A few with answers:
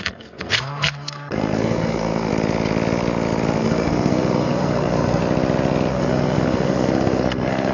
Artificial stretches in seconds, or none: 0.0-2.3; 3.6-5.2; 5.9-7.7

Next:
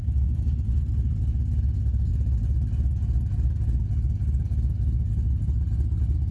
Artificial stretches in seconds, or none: none

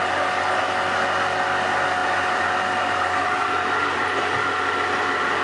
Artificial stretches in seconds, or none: 2.0-4.6

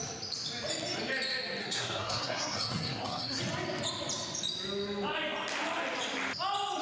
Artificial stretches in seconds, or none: 1.6-3.4